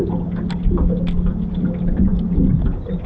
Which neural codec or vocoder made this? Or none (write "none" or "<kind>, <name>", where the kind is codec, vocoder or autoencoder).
none